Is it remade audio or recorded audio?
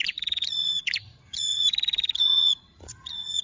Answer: remade